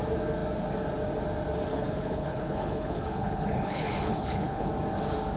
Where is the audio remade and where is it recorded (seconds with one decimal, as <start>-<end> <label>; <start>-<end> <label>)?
0.0-1.7 recorded; 1.7-4.7 remade; 4.7-5.4 recorded